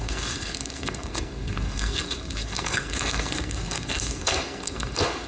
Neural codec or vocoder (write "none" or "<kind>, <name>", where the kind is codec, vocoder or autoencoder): codec, SNAC